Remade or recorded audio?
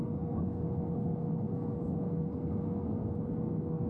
remade